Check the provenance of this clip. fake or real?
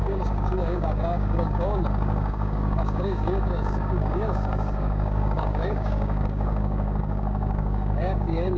fake